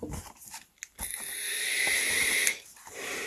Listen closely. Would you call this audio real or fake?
real